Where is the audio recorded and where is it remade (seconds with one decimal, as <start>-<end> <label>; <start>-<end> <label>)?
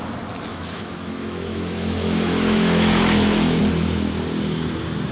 0.0-0.5 recorded; 0.5-3.6 remade; 3.6-5.1 recorded